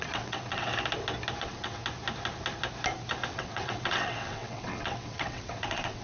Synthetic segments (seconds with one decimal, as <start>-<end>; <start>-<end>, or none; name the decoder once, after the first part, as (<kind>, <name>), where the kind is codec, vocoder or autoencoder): 0.0-0.7 (vocoder, WaveNeXt); 1.4-1.8; 3.3-6.0